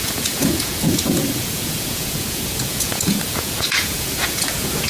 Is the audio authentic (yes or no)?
no